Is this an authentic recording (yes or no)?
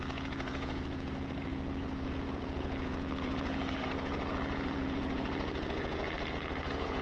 no